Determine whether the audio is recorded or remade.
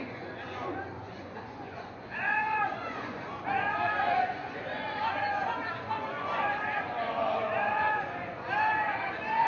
remade